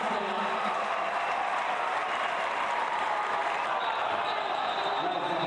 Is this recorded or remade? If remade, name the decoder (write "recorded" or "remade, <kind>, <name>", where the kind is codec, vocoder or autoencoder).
remade, vocoder, BigVGAN v2